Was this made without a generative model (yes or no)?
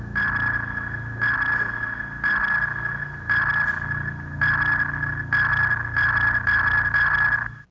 yes